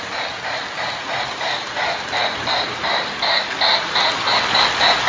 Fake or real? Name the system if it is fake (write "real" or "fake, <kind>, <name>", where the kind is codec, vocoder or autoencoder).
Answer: real